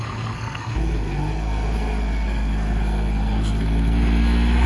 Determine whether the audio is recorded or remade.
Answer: remade